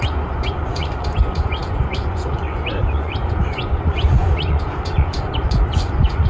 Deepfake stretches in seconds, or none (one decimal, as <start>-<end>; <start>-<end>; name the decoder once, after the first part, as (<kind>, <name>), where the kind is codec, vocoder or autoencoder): 0.0-6.3 (vocoder, Vocos)